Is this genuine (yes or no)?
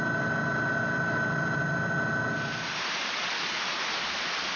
yes